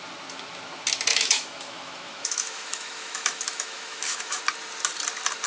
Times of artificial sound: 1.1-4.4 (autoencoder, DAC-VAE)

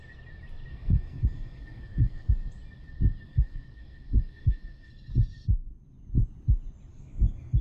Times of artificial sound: 0.7-2.3 (codec, SNAC); 3.3-4.9; 6.9-7.6

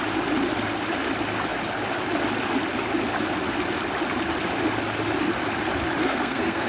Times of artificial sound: 6.0-6.7 (codec, SNAC)

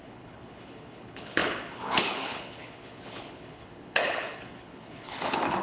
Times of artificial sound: 0.0-5.6 (codec, HILCodec)

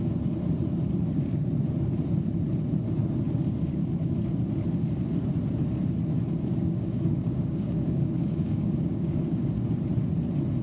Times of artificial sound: 6.5-9.5 (codec, DAC)

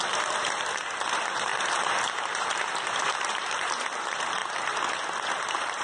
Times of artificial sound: 0.0-4.4 (vocoder, BigVGAN v2); 5.2-5.8